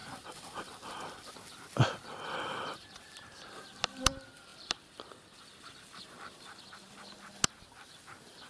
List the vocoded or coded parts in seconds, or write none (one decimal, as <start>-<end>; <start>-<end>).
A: 0.0-1.3